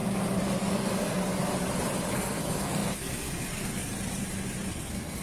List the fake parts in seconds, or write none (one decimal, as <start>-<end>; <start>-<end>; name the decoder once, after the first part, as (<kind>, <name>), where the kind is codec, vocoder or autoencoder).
0.6-1.2 (codec, SNAC); 2.1-3.9; 4.7-5.2